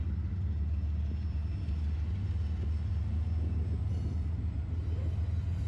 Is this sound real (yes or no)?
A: yes